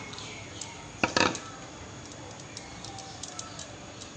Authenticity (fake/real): real